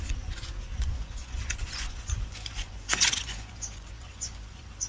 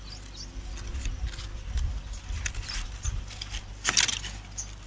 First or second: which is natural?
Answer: second